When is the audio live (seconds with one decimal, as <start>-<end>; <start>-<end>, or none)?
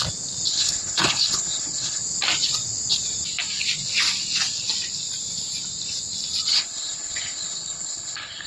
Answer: 0.0-0.5; 2.0-6.5